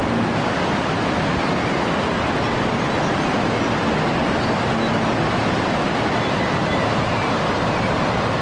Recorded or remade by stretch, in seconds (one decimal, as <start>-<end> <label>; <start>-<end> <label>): 0.0-8.4 recorded